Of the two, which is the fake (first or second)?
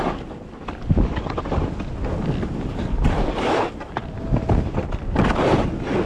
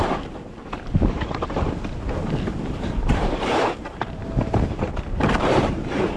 second